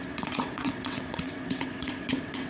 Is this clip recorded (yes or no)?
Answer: no